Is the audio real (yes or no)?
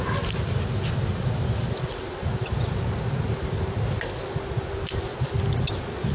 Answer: yes